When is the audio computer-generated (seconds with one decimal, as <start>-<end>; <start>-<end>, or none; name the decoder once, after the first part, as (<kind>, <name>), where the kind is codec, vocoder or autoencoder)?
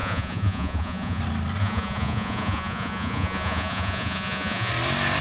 0.0-1.2 (vocoder, Vocos); 1.6-4.7